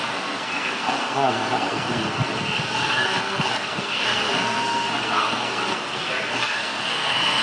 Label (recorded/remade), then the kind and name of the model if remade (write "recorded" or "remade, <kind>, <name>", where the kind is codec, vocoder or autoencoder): remade, codec, SNAC